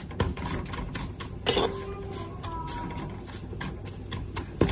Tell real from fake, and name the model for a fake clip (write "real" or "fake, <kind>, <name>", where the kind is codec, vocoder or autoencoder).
real